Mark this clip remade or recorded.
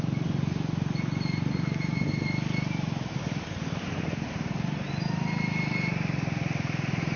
recorded